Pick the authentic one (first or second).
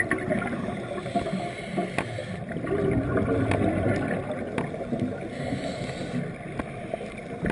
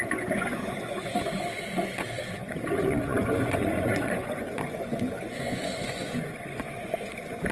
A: first